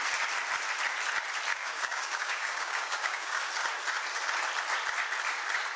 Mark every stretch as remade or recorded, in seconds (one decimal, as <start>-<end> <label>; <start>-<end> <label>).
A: 0.0-1.5 recorded; 1.5-3.5 remade; 3.5-5.8 recorded

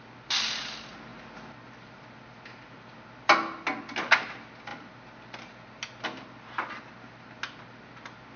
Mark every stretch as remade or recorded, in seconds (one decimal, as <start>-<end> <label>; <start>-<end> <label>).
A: 0.0-8.4 recorded

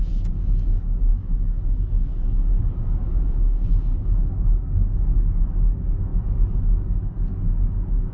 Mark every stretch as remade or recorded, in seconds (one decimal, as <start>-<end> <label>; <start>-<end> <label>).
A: 0.0-8.1 remade

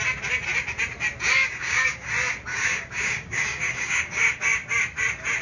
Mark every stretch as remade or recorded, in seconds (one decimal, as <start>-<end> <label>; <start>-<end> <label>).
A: 0.0-1.4 recorded; 1.4-2.1 remade; 2.1-2.5 recorded; 2.5-4.4 remade; 4.4-5.4 recorded